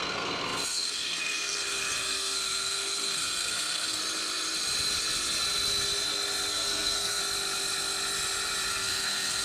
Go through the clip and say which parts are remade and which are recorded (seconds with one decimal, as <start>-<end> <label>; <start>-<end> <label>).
0.0-4.0 remade; 4.0-6.5 recorded; 6.5-7.2 remade; 7.2-8.7 recorded; 8.7-9.4 remade